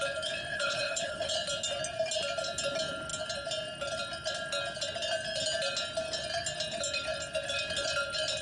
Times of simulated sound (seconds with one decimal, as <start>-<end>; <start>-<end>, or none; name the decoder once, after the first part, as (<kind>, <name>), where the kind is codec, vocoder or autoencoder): 0.5-1.3 (codec, HILCodec)